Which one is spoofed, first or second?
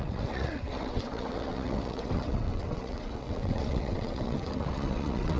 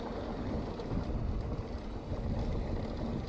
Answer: first